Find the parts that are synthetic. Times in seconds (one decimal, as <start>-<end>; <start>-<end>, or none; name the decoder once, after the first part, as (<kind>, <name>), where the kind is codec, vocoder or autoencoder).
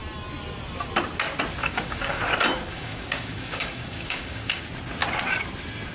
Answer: 1.6-2.2 (codec, DAC); 2.7-4.6